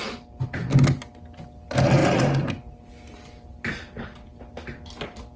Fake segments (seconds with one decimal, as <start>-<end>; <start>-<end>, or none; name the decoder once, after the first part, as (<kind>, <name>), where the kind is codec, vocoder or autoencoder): none